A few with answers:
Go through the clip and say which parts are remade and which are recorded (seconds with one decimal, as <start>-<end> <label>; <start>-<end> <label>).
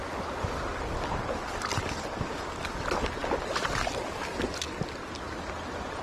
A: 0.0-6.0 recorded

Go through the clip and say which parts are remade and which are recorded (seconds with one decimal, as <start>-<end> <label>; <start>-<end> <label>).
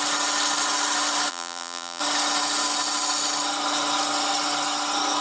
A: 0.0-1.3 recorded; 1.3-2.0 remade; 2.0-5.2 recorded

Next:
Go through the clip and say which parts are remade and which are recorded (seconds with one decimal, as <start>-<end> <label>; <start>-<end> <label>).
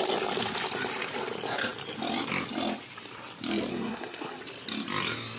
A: 0.0-3.7 recorded; 3.7-4.4 remade; 4.4-5.4 recorded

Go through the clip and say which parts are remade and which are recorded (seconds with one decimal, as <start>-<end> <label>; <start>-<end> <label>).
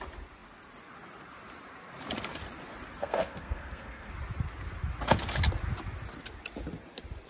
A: 0.0-3.0 recorded; 3.0-4.1 remade; 4.1-7.3 recorded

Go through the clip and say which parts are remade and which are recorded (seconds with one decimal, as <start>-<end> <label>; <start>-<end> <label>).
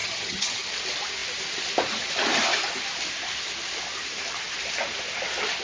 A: 0.0-0.7 remade; 0.7-5.6 recorded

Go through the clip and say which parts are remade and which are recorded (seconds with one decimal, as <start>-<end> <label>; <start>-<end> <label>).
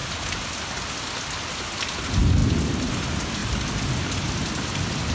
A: 0.0-5.1 recorded